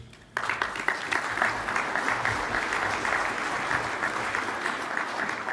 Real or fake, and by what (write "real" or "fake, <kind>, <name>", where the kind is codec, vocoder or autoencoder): real